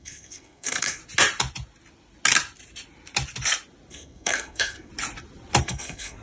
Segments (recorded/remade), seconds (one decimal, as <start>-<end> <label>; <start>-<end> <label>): 0.0-1.0 remade; 1.0-3.9 recorded; 3.9-4.9 remade; 4.9-5.6 recorded; 5.6-6.2 remade